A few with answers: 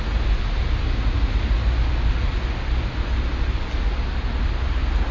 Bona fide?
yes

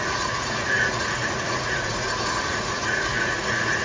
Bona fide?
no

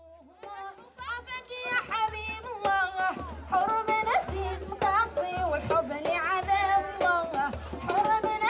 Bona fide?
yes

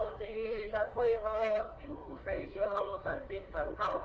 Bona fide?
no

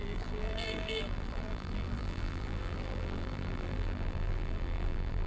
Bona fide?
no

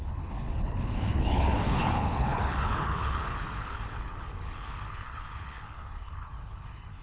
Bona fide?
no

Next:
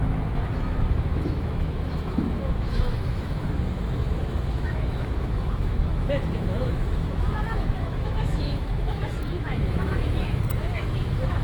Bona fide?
no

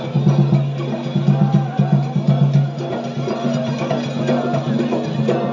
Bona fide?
yes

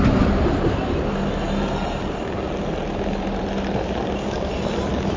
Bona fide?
yes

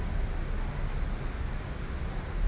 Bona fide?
yes